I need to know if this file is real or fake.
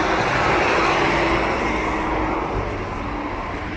real